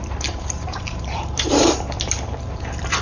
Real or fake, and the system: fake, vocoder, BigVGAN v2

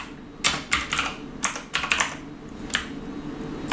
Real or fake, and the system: real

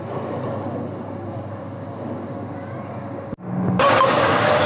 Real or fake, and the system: real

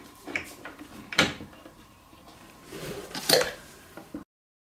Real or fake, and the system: fake, vocoder, BigVGAN v2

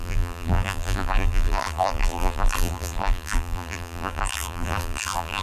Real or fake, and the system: fake, vocoder, BigVGAN v2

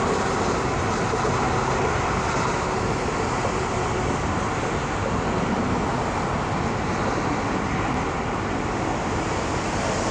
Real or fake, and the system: real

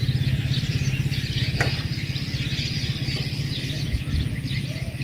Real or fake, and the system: real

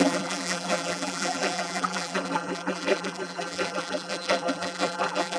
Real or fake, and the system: fake, vocoder, BigVGAN v2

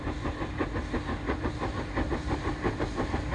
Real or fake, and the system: real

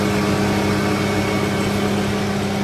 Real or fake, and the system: real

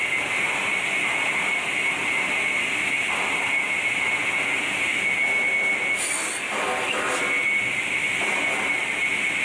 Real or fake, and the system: real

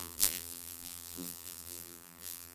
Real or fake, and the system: fake, vocoder, BigVGAN v2